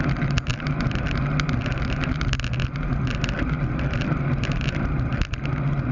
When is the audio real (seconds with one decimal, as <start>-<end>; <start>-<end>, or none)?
0.0-5.9